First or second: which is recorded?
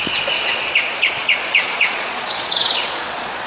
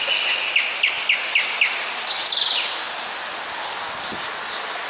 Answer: second